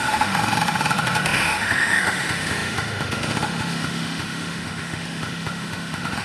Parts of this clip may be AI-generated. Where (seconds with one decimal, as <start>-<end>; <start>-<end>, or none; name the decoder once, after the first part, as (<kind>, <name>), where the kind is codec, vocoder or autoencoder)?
0.0-6.2 (autoencoder, DAC-VAE)